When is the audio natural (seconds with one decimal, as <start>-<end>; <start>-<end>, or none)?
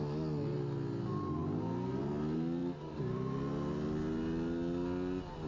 0.0-2.6; 3.3-5.5